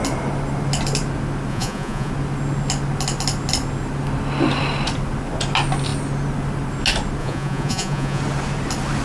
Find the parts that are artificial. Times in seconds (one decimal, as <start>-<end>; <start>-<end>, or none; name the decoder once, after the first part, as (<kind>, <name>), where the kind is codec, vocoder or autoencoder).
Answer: 1.5-2.1 (vocoder, Vocos); 7.2-8.2